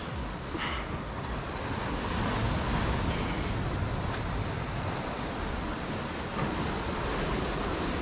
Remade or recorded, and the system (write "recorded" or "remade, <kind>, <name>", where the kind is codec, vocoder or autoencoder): recorded